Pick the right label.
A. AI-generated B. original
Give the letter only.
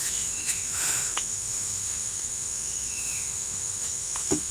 A